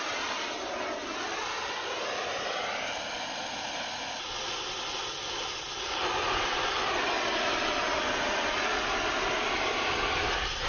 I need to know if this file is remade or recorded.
recorded